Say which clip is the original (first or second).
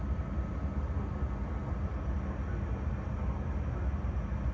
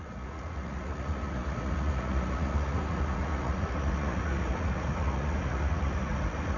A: first